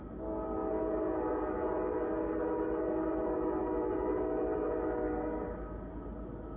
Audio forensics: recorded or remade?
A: recorded